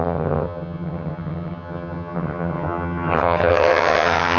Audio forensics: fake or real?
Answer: fake